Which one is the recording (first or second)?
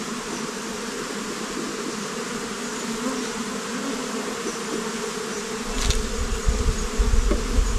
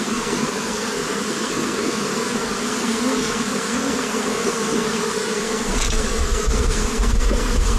first